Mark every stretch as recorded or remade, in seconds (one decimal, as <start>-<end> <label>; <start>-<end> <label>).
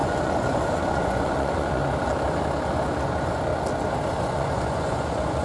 0.0-1.8 remade; 1.8-3.1 recorded; 3.1-3.5 remade; 3.5-4.2 recorded; 4.2-5.4 remade